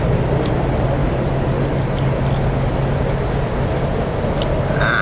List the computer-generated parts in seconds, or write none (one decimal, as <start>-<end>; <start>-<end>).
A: none